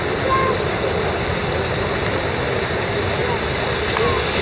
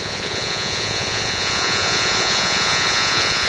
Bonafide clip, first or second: first